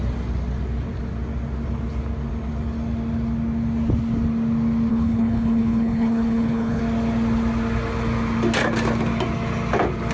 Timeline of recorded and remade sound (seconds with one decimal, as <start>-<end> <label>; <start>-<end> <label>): 0.0-4.9 recorded; 4.9-6.8 remade; 6.8-10.1 recorded